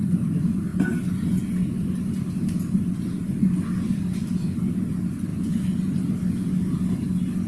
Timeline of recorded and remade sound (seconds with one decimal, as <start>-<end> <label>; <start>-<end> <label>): 0.0-7.5 recorded